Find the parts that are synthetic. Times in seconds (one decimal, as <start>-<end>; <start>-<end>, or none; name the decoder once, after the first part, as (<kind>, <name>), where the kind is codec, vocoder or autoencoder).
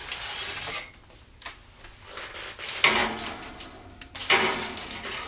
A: none